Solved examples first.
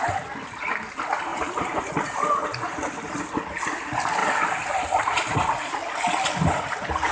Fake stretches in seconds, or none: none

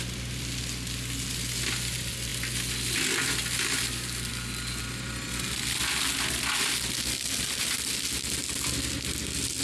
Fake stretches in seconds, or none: none

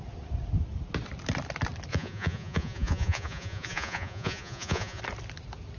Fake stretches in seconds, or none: 1.9-5.0

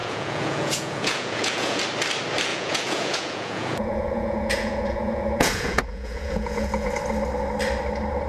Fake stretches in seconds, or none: 0.0-1.8; 2.5-6.9